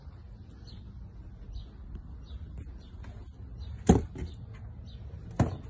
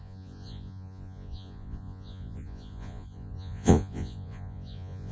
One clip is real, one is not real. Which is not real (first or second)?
second